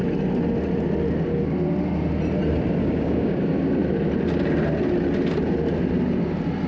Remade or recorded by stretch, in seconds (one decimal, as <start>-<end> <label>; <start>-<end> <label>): 0.0-2.8 recorded; 2.8-3.4 remade; 3.4-6.7 recorded